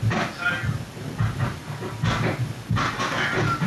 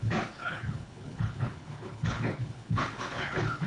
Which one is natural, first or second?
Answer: first